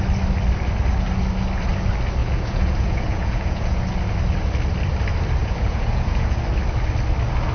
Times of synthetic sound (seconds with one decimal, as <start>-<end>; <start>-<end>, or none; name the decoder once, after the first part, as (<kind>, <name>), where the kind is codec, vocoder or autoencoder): 2.2-3.8 (vocoder, Vocos); 5.4-6.4